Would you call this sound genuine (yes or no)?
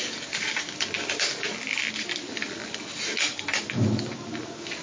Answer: yes